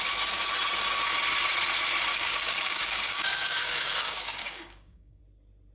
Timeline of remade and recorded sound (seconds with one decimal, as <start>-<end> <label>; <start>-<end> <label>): 0.0-2.1 recorded; 2.1-5.2 remade; 5.2-5.7 recorded